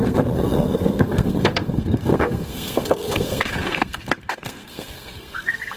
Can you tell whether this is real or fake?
fake